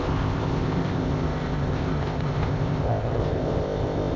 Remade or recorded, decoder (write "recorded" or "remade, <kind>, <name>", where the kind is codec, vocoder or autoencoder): remade, codec, ZipCodec